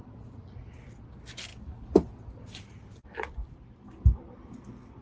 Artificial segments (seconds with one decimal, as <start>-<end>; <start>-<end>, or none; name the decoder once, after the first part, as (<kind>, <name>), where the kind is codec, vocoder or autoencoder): none

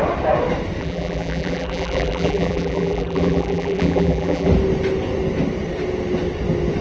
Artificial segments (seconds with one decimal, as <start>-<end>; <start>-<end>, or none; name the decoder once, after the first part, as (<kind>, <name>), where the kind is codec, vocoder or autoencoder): 0.8-4.5 (vocoder, BigVGAN v2)

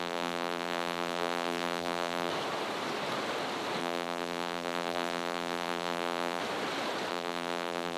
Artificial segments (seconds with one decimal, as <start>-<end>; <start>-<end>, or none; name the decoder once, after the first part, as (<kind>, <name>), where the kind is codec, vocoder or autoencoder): 0.0-2.3 (vocoder, BigVGAN v2); 3.8-6.4; 7.1-8.0

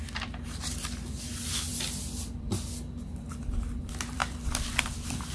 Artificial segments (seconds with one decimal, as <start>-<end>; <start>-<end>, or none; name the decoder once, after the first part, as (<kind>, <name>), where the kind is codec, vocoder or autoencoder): 0.0-1.7 (vocoder, BigVGAN v2); 3.4-5.3

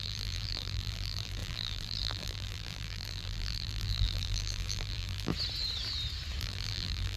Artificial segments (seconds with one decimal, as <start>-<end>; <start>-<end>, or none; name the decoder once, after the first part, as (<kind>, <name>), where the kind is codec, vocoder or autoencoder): 0.0-5.3 (vocoder, BigVGAN v2); 6.4-7.2

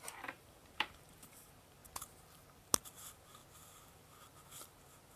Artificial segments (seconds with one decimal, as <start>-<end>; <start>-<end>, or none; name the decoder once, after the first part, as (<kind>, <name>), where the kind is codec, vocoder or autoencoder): 0.0-1.8 (vocoder, BigVGAN v2); 2.6-3.4; 3.9-5.2

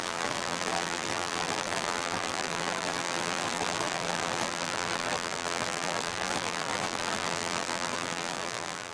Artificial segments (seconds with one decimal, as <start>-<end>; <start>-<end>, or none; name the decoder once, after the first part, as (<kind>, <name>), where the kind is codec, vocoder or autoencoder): 0.0-8.9 (vocoder, BigVGAN v2)

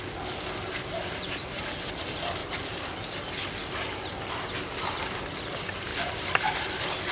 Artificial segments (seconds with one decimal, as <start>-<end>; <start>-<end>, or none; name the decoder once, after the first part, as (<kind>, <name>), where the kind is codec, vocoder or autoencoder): 1.0-1.7 (vocoder, BigVGAN v2); 5.9-6.5